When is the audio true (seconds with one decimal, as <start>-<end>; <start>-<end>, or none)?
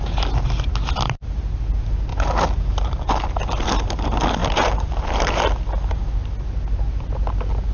0.0-2.1; 3.1-4.4; 5.4-7.7